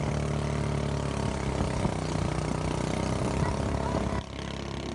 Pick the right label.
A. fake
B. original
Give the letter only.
B